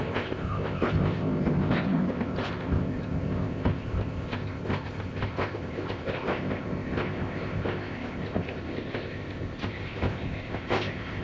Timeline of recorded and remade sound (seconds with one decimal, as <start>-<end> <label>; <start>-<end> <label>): 0.0-11.2 remade